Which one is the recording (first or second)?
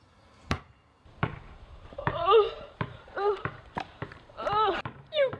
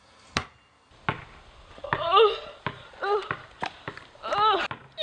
second